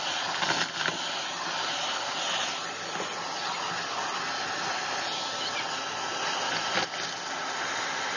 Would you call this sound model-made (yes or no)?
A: no